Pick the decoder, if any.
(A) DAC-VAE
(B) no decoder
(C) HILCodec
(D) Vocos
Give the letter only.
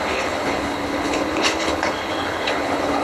C